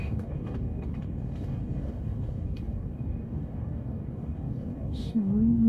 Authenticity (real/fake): fake